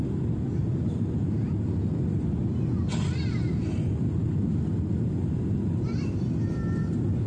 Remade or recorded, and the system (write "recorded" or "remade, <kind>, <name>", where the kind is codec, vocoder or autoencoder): recorded